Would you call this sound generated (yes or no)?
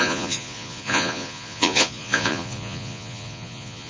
yes